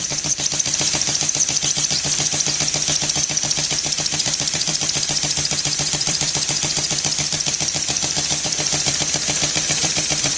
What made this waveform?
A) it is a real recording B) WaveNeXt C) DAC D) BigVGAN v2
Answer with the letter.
D